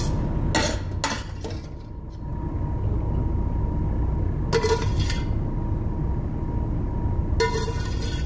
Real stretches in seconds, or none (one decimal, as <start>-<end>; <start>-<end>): 0.0-8.3